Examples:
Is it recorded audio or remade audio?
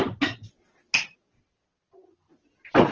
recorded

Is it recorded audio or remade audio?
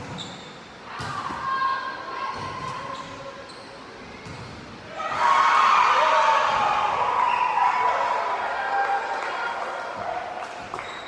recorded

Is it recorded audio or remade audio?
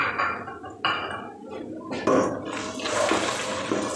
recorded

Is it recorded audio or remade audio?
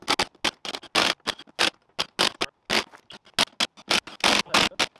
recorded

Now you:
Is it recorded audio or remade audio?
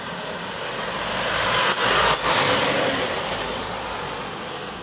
remade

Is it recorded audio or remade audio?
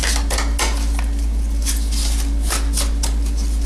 recorded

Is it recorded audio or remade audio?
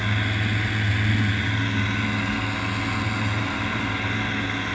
recorded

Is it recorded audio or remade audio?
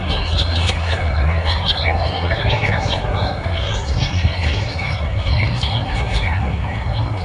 remade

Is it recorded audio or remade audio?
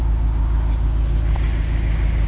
recorded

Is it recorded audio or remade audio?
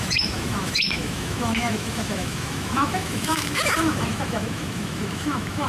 remade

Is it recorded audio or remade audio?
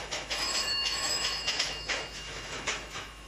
remade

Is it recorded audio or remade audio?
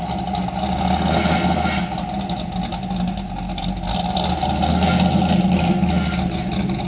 recorded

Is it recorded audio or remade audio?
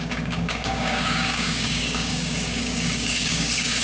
remade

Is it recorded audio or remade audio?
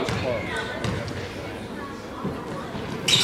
recorded